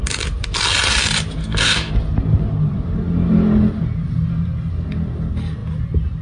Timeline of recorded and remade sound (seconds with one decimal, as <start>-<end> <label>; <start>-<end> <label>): 0.0-1.4 recorded; 1.4-1.9 remade; 1.9-6.2 recorded